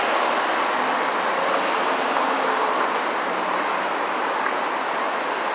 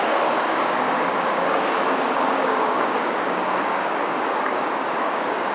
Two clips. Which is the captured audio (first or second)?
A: first